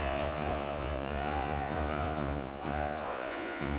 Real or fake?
fake